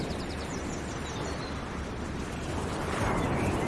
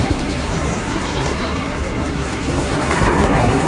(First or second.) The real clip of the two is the first